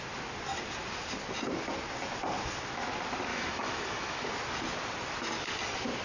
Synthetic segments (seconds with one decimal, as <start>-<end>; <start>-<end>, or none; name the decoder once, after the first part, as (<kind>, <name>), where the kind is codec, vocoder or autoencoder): 3.3-4.3 (autoencoder, DAC-VAE)